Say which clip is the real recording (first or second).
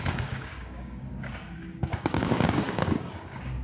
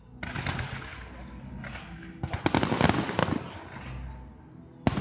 second